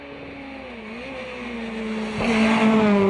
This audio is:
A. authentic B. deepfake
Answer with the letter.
A